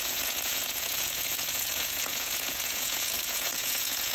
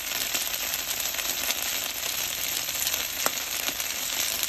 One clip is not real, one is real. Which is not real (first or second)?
first